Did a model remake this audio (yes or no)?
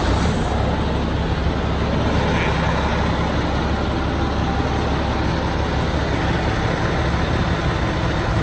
no